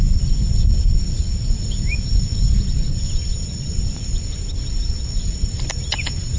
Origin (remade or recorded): recorded